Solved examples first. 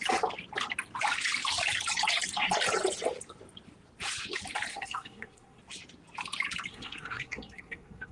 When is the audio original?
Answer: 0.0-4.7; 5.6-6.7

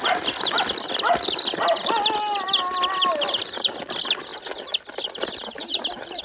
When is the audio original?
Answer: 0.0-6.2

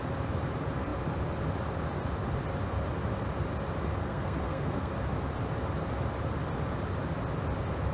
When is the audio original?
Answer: 0.0-4.0; 4.9-7.9